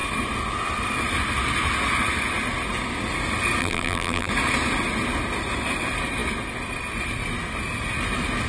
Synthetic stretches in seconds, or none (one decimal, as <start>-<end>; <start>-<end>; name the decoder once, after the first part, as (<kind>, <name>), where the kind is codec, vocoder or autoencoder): 3.6-4.3 (vocoder, BigVGAN v2)